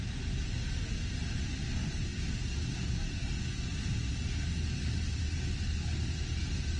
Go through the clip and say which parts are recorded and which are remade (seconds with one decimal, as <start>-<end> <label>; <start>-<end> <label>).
0.0-6.8 recorded